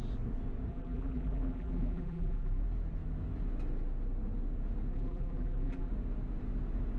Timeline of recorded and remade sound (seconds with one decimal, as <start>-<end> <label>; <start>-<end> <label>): 0.0-0.7 recorded; 0.7-2.6 remade; 2.6-4.9 recorded; 4.9-5.9 remade; 5.9-7.0 recorded